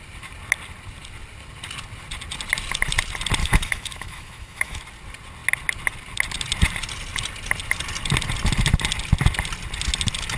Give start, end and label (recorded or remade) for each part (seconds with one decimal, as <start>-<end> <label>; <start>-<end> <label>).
0.0-3.4 recorded; 3.4-4.8 remade; 4.8-10.4 recorded